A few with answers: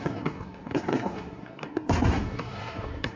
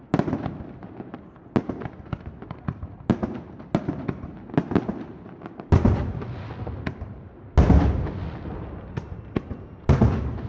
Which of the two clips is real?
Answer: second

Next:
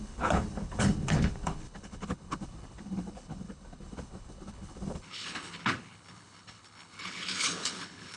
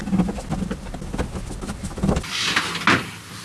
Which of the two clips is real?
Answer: second